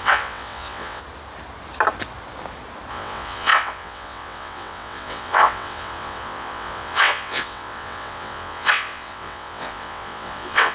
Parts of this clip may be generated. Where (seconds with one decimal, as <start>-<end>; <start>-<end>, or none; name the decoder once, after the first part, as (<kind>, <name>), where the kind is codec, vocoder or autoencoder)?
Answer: 0.0-1.0 (vocoder, WaveNeXt); 2.9-10.7

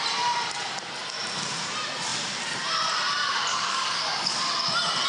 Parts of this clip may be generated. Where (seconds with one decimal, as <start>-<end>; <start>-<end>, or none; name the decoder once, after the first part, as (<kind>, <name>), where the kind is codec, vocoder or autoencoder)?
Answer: 3.5-4.4 (codec, DAC)

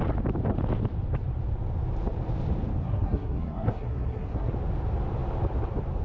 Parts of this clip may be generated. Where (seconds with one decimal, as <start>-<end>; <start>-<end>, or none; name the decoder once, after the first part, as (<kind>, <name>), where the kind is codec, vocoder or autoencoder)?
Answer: 2.8-4.5 (codec, SNAC)